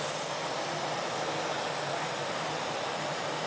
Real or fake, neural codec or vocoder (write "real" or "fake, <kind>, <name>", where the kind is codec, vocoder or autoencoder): real